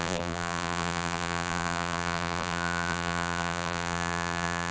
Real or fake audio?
fake